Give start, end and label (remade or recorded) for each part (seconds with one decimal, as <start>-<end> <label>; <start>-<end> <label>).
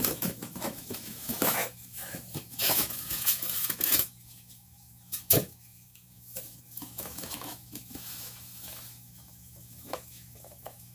0.0-10.9 remade